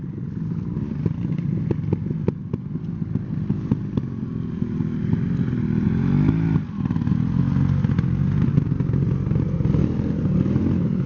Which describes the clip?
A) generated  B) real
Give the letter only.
B